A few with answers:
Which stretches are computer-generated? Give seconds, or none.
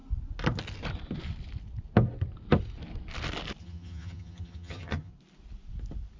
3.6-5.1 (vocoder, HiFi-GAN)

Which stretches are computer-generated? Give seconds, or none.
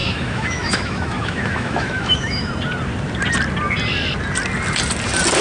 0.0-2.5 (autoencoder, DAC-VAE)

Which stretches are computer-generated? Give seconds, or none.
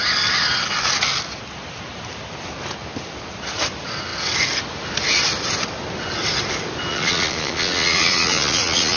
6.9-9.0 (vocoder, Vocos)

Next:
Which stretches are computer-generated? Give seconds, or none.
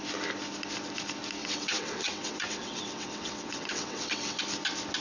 1.4-4.4 (vocoder, WaveNeXt)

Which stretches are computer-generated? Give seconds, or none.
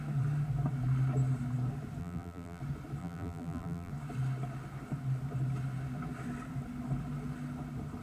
2.0-2.6 (vocoder, BigVGAN v2); 3.0-3.9